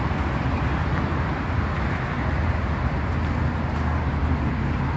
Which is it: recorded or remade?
recorded